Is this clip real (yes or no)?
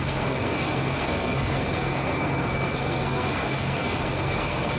no